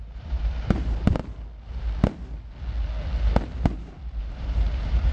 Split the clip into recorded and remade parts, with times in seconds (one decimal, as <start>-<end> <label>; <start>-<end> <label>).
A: 0.0-1.2 remade; 1.2-4.2 recorded; 4.2-5.1 remade